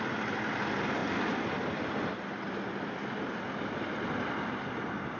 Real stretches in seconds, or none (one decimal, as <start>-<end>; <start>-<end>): 0.0-5.2